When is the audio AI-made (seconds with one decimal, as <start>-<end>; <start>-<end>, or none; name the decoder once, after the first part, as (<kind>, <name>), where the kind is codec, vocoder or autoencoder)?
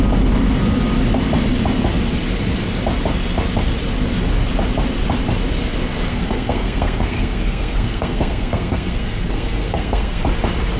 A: 6.1-10.2 (codec, SNAC)